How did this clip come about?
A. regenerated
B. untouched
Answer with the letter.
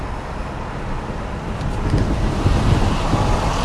B